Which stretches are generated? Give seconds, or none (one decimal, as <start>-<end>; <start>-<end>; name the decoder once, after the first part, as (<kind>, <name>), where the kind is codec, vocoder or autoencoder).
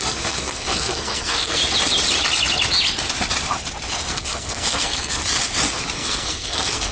0.0-1.6 (codec, SNAC); 4.1-5.2; 5.9-6.9